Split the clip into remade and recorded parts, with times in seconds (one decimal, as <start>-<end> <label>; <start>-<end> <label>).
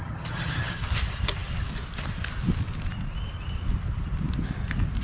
0.0-0.8 remade; 0.8-5.0 recorded